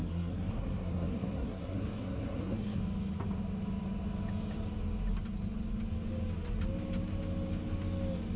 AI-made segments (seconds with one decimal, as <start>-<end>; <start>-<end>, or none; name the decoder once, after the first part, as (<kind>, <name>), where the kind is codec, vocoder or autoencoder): 0.0-2.8 (codec, SNAC)